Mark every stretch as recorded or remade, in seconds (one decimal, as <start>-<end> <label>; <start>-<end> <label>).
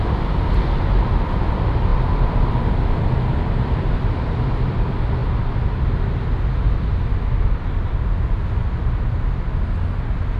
0.0-10.4 recorded